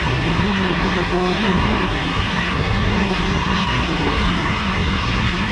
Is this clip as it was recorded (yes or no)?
no